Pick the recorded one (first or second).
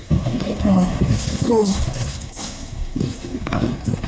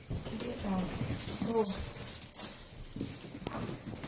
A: second